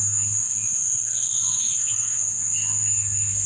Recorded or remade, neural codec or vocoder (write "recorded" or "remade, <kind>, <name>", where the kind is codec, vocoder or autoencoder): remade, codec, SNAC